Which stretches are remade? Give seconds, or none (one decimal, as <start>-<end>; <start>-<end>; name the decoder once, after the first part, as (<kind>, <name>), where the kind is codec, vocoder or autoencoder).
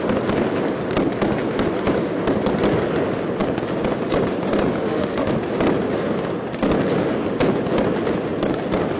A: 4.8-5.3 (autoencoder, DAC-VAE)